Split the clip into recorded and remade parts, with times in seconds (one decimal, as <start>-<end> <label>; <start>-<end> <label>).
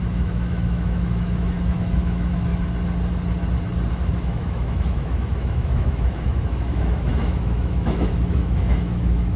0.0-2.5 remade; 2.5-3.9 recorded; 3.9-9.4 remade